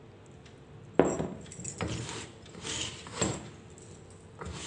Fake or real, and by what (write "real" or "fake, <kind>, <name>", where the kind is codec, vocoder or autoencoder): real